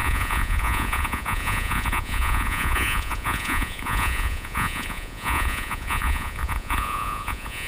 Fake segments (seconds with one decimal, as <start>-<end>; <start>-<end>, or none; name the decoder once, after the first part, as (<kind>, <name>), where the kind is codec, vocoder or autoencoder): 0.0-7.7 (vocoder, Vocos)

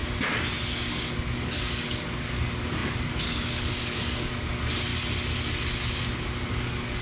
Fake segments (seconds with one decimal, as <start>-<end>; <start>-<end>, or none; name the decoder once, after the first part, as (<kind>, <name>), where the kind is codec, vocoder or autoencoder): 0.9-4.9 (codec, DAC); 6.6-7.0

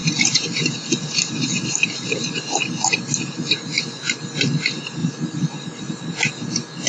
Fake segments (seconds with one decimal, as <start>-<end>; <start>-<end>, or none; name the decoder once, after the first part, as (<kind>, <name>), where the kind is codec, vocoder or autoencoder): 0.0-3.6 (vocoder, BigVGAN v2); 5.0-5.9

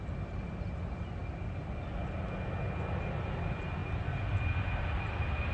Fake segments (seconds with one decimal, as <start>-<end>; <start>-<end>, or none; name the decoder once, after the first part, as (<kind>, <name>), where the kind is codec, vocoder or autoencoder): none

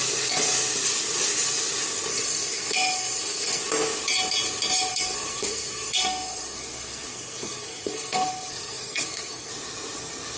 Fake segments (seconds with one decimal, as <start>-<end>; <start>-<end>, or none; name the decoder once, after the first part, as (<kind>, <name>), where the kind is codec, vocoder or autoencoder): 2.1-3.6 (codec, SNAC); 4.9-9.5

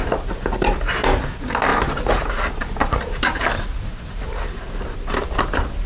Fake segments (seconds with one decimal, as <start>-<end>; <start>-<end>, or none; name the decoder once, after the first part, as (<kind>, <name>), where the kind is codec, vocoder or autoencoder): 1.7-2.3 (vocoder, BigVGAN v2)

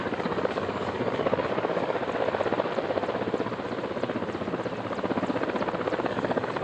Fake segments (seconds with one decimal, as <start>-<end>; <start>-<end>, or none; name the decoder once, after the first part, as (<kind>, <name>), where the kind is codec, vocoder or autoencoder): 0.0-2.0 (codec, DAC); 6.0-6.6

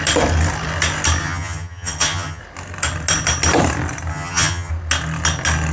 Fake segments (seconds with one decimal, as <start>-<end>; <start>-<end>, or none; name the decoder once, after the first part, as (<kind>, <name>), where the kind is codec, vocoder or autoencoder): 1.2-2.4 (vocoder, HiFi-GAN); 4.1-4.7